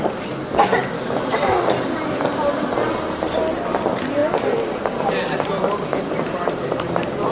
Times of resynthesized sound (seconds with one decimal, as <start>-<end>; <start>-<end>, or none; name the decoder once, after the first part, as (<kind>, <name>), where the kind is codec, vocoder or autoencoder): none

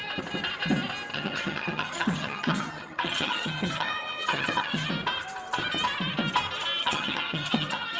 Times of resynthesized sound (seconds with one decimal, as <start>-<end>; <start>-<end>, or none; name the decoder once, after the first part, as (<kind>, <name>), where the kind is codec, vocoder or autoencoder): 1.1-4.9 (vocoder, HiFi-GAN); 6.8-8.0

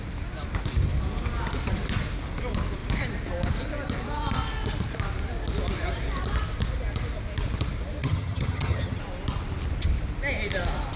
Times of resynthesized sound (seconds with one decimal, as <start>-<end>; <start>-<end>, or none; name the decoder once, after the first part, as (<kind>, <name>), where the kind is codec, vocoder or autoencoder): 8.0-9.0 (vocoder, HiFi-GAN)

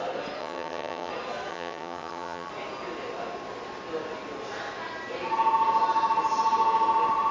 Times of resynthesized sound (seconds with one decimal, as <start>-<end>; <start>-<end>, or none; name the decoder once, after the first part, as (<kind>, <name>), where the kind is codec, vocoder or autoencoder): 0.4-1.1 (vocoder, HiFi-GAN); 1.5-2.5

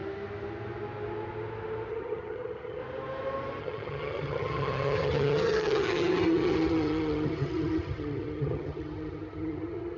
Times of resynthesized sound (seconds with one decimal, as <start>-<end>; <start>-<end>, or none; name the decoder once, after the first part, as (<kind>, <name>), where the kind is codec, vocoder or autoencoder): 1.9-2.8 (vocoder, HiFi-GAN); 3.6-10.0